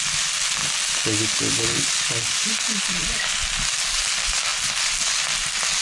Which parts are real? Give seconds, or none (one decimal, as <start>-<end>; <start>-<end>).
0.0-5.8